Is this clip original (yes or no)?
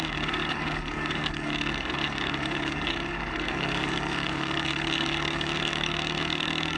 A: no